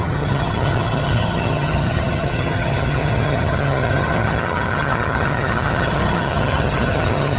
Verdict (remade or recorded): remade